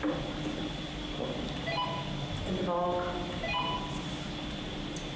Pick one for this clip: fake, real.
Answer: real